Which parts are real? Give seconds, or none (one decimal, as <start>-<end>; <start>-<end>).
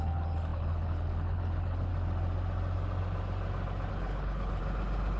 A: 1.9-3.9; 4.6-5.2